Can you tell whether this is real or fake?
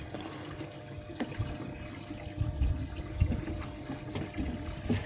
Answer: real